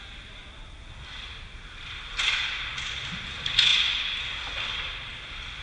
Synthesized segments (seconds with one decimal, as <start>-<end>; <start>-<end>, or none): none